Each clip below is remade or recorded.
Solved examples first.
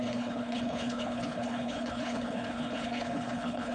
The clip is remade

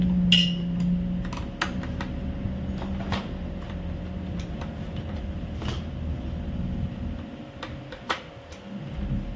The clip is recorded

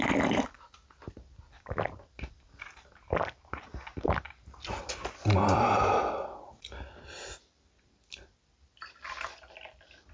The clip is recorded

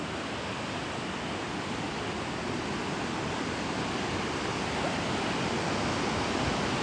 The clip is recorded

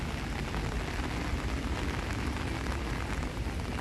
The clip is recorded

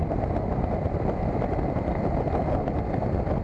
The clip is recorded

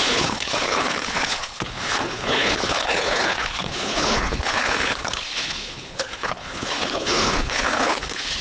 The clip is remade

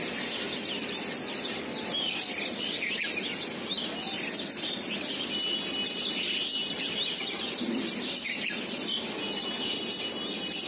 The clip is recorded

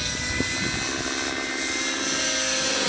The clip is recorded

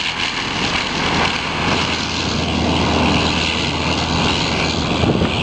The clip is recorded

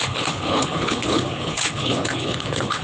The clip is remade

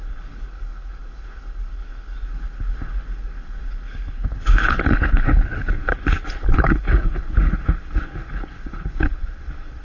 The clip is remade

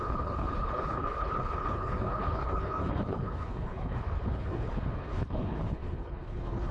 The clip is remade